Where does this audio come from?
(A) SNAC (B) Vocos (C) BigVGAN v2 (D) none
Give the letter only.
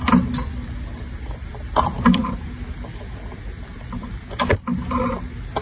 D